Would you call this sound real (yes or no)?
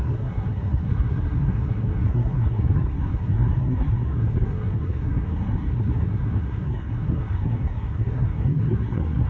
no